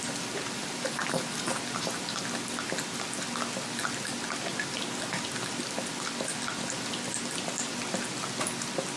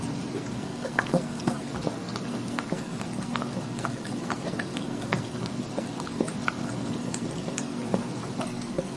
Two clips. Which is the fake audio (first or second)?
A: second